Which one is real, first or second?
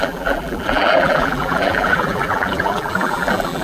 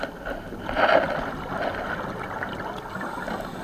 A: second